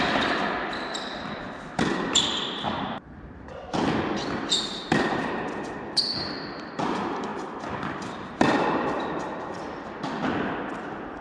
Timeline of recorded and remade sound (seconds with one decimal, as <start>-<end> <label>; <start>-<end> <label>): 0.0-11.2 remade